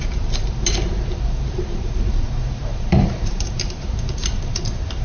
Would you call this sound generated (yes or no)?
yes